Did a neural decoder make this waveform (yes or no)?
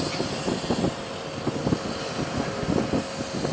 no